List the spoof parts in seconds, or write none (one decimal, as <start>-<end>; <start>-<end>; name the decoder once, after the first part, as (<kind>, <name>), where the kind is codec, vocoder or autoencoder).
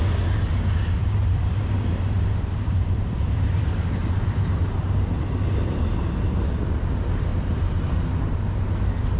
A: 1.0-5.8 (vocoder, BigVGAN v2); 7.3-7.8